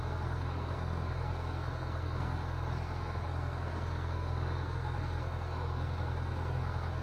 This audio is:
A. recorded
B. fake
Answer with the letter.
B